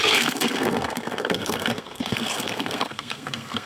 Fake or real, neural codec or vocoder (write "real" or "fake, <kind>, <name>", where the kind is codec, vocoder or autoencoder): fake, codec, SNAC